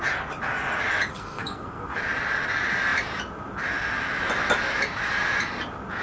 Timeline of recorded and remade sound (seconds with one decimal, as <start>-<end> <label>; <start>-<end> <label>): 0.0-1.1 recorded; 1.1-2.0 remade; 2.0-6.0 recorded

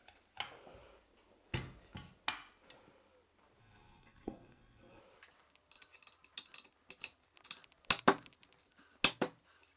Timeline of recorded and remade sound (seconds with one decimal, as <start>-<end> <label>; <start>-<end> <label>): 0.0-3.6 recorded; 3.6-5.0 remade; 5.0-9.8 recorded

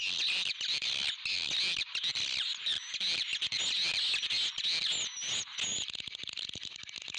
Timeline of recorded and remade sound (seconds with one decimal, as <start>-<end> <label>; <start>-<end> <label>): 0.0-7.2 recorded

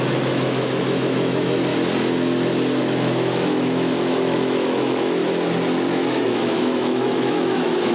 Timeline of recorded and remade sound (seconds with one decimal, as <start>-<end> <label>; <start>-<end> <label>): 0.0-1.7 remade; 1.7-2.8 recorded; 2.8-5.2 remade; 5.2-5.9 recorded; 5.9-7.9 remade

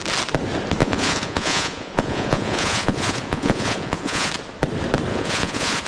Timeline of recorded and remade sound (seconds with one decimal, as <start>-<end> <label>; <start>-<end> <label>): 0.0-0.8 recorded; 0.8-4.3 remade; 4.3-5.1 recorded; 5.1-5.9 remade

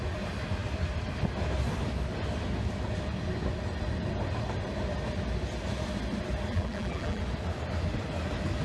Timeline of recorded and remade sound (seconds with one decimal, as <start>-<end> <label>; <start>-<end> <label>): 0.0-6.5 recorded; 6.5-7.2 remade; 7.2-8.6 recorded

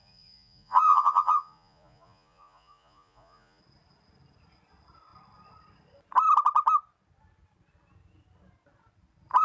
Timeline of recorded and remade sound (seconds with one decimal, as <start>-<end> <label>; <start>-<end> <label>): 0.0-3.6 remade; 3.6-9.4 recorded

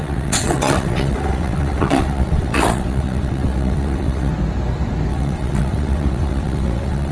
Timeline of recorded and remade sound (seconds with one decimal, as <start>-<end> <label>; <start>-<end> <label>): 0.0-4.3 remade; 4.3-5.1 recorded; 5.1-7.1 remade